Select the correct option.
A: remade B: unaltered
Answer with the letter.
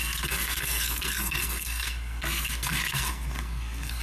A